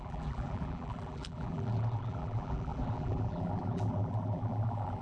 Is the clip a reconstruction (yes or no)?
yes